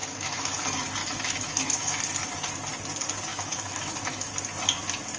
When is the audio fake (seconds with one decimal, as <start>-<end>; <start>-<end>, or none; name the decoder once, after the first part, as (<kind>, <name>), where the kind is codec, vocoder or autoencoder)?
0.0-0.6 (autoencoder, DAC-VAE); 1.0-2.0; 3.3-4.3

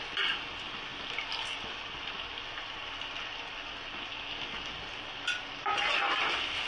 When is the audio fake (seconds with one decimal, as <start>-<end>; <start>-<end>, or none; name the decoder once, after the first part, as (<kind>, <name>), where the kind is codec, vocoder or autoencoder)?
none

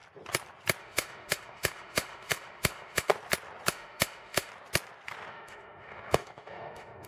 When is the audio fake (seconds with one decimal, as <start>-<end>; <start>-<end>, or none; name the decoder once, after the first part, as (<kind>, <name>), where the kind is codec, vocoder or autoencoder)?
0.8-3.1 (autoencoder, DAC-VAE); 3.7-4.5; 5.3-7.1

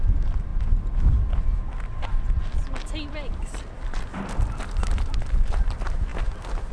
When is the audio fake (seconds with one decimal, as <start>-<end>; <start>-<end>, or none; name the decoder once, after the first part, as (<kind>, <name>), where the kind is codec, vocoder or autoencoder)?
none

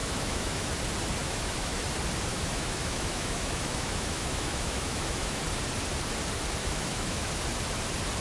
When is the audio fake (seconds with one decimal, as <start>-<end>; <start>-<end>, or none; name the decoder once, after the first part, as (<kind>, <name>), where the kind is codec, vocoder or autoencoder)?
0.0-0.7 (autoencoder, DAC-VAE); 1.2-1.8; 2.3-5.4; 6.6-7.3

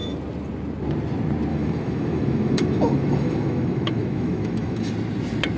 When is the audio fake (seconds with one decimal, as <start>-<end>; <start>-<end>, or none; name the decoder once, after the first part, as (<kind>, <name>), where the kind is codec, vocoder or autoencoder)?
1.5-4.9 (autoencoder, DAC-VAE)